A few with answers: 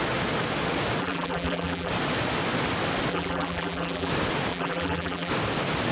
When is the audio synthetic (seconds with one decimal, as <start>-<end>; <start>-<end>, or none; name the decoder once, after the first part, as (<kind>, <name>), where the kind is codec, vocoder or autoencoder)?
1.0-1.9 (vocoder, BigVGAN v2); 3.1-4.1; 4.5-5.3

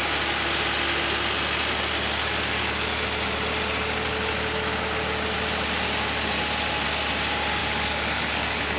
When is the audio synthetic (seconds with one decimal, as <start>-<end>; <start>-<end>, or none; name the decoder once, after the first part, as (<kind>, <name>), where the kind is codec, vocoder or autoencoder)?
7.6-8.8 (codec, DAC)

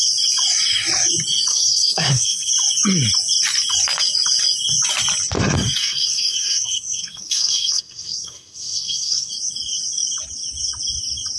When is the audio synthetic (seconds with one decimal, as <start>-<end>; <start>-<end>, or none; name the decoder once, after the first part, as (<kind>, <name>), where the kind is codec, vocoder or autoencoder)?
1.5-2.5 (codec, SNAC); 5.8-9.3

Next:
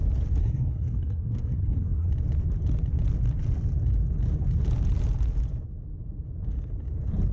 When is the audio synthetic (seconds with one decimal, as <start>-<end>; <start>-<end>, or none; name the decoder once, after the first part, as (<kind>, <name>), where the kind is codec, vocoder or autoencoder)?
0.4-2.1 (codec, SNAC)